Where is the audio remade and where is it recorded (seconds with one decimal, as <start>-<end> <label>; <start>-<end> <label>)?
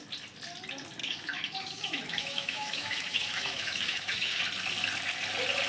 0.0-1.0 recorded; 1.0-4.4 remade; 4.4-5.7 recorded